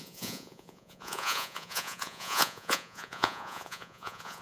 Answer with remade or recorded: remade